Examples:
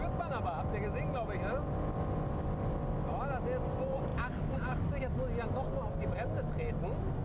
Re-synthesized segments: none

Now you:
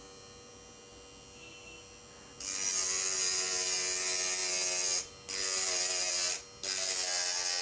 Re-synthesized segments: none